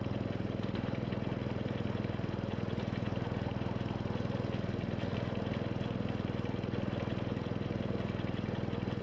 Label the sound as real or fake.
real